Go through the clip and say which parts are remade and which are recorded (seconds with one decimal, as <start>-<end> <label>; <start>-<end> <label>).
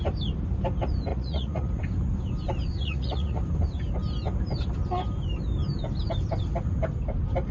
0.0-1.1 recorded; 1.1-1.8 remade; 1.8-2.8 recorded; 2.8-3.4 remade; 3.4-7.5 recorded